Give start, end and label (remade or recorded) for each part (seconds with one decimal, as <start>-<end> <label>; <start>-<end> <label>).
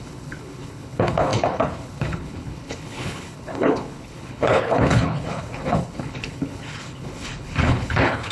0.0-8.3 remade